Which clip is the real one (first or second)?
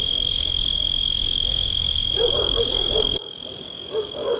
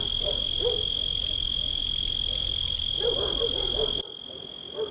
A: second